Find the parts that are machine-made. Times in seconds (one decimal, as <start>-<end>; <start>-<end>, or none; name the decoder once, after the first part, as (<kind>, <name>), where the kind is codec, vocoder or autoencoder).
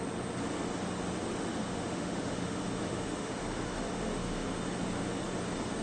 1.3-4.6 (autoencoder, DAC-VAE)